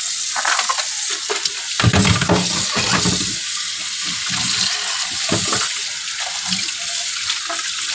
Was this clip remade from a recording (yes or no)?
no